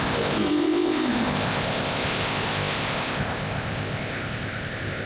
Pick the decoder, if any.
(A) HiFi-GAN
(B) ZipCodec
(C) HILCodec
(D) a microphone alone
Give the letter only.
B